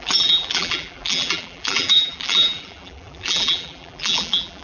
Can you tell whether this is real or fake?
fake